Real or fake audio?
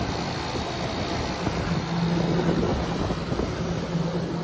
real